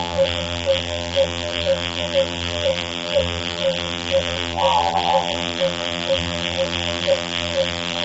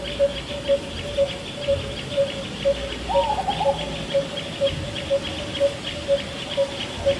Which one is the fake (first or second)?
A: first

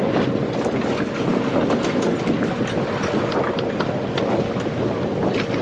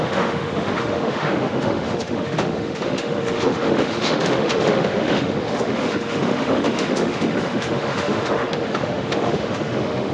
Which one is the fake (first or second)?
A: second